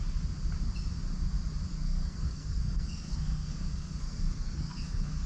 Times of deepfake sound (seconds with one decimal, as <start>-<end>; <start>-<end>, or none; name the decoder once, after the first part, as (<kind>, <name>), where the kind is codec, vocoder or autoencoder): 1.7-5.3 (codec, SNAC)